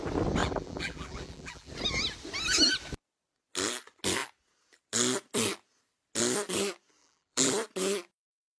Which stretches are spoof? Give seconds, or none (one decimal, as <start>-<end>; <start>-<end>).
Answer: 0.4-1.7; 7.0-7.5